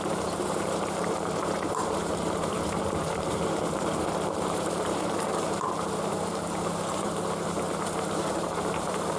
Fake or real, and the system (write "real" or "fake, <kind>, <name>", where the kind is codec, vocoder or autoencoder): fake, vocoder, BigVGAN v2